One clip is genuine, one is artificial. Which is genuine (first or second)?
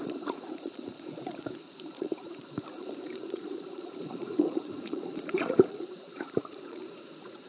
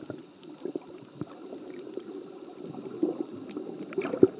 second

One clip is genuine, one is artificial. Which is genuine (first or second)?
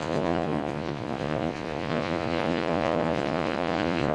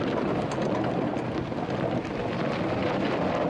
second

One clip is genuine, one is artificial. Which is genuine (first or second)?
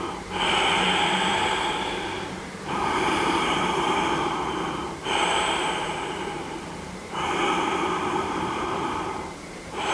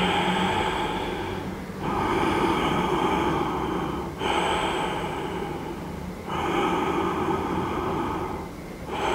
second